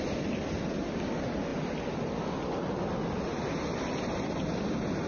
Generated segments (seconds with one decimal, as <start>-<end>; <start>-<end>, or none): none